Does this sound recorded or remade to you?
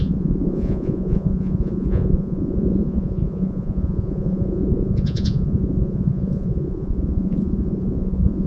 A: remade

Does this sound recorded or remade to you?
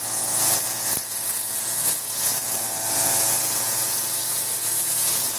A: remade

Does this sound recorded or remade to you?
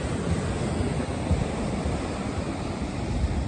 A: recorded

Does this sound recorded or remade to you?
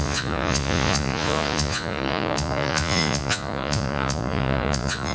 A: remade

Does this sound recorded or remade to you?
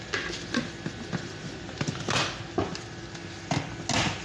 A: recorded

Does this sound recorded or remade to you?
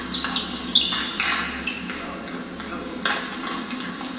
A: recorded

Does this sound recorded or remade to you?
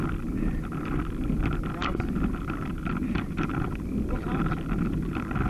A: recorded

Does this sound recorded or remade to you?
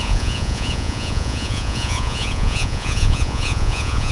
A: remade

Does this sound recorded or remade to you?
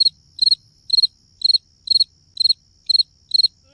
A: recorded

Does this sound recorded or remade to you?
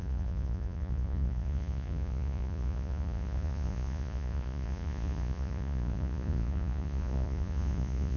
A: remade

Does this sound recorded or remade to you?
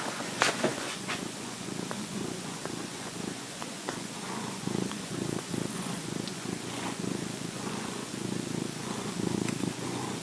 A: remade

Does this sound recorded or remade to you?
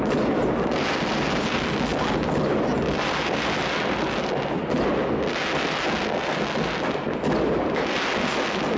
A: recorded